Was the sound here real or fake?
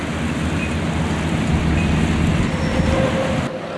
real